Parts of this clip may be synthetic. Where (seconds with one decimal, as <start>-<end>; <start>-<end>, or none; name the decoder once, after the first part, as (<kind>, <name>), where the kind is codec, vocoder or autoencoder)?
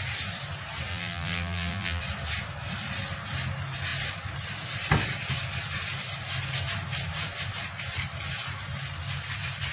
0.9-2.0 (vocoder, BigVGAN v2)